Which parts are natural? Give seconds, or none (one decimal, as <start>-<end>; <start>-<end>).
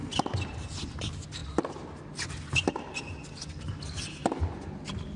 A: 0.0-5.2